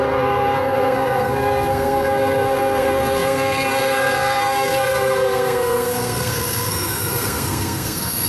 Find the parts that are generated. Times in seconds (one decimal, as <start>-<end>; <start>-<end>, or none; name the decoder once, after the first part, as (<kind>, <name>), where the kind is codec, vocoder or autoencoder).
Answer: 0.0-8.3 (codec, SNAC)

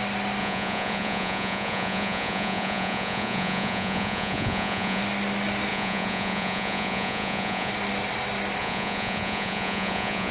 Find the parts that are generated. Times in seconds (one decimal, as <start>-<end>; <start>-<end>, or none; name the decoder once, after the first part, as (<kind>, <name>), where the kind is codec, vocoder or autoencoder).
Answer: 0.4-5.0 (vocoder, Vocos); 5.7-7.7; 8.6-10.3

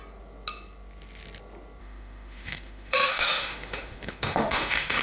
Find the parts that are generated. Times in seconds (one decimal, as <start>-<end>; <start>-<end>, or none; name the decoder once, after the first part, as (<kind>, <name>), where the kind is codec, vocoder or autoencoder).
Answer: 1.8-5.0 (autoencoder, DAC-VAE)

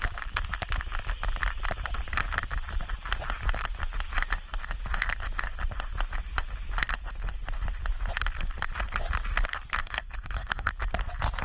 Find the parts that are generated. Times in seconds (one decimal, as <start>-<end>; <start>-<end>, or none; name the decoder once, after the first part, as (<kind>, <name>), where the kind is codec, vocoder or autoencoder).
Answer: 9.8-10.7 (codec, SNAC)

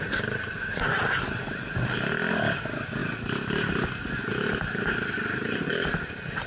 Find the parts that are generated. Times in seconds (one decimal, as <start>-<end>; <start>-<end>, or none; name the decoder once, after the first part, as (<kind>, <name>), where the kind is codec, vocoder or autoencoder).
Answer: none

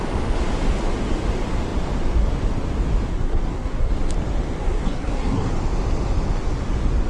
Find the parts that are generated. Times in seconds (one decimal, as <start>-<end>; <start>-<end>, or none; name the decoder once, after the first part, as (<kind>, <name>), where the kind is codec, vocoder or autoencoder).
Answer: 3.1-3.9 (codec, SNAC); 4.6-5.5

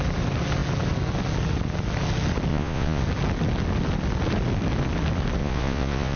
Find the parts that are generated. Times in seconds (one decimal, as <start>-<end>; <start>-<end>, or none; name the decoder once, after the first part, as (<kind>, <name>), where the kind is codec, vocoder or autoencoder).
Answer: 2.5-3.0 (vocoder, Vocos); 5.4-6.2